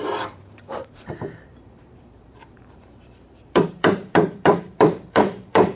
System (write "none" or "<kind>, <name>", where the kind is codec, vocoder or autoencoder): vocoder, BigVGAN v2